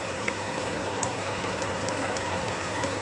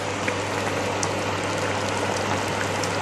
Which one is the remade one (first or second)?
first